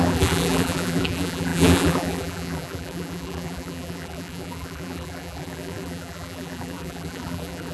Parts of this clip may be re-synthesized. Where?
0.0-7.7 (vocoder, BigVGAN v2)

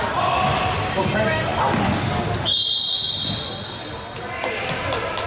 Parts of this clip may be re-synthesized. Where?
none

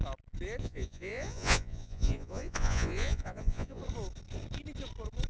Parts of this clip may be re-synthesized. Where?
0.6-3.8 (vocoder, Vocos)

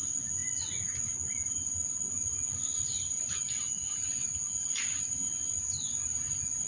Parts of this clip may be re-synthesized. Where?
none